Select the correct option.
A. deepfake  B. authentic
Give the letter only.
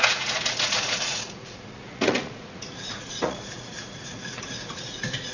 A